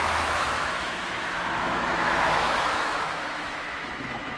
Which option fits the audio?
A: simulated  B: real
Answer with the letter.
A